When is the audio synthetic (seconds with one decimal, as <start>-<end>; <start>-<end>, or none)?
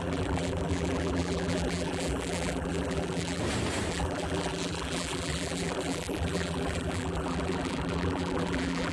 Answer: 0.0-3.4; 3.9-8.9